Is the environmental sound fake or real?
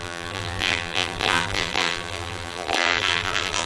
fake